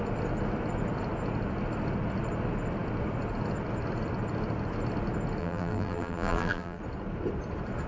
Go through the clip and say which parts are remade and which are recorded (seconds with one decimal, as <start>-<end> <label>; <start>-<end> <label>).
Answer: 0.0-5.4 recorded; 5.4-6.8 remade; 6.8-7.9 recorded